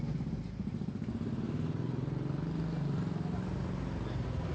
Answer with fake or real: real